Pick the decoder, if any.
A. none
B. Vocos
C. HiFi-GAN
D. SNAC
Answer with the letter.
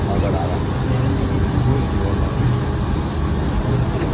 A